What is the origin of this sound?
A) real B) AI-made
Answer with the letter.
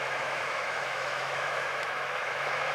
B